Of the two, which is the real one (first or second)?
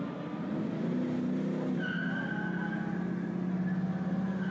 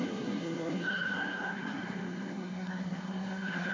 first